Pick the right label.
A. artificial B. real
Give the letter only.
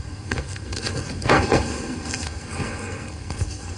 A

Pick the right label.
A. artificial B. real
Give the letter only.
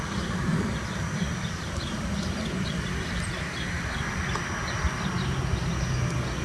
B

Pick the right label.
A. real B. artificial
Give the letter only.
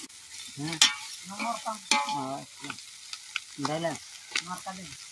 A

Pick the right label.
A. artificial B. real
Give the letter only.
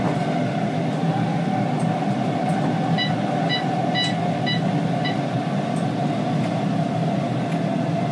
B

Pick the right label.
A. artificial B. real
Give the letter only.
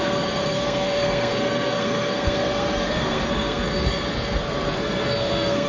A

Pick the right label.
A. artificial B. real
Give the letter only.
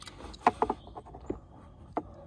B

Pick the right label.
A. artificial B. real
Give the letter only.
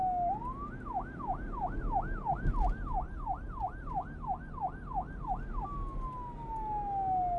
B